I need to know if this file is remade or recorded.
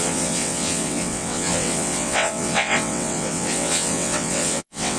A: remade